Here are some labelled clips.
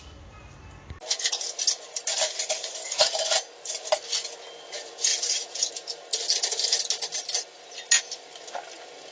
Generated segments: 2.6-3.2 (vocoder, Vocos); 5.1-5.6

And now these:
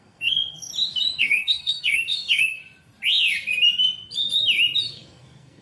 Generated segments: 0.0-0.7 (codec, SNAC); 1.2-2.6; 4.9-5.6

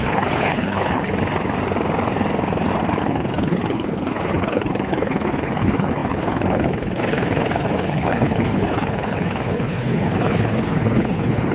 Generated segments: 0.0-1.1 (codec, HILCodec); 3.0-11.5

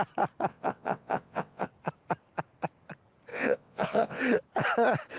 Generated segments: 0.5-1.7 (vocoder, WaveNeXt); 3.3-4.2

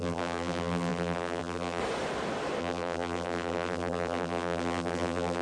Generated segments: 0.0-1.8 (vocoder, BigVGAN v2); 2.6-5.4